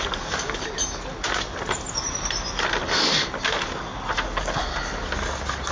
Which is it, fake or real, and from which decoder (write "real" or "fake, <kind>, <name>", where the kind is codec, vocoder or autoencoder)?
real